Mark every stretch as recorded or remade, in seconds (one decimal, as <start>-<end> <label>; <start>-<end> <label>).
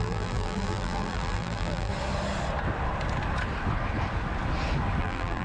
0.0-1.9 remade; 1.9-5.0 recorded; 5.0-5.4 remade